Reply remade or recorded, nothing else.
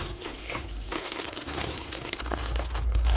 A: remade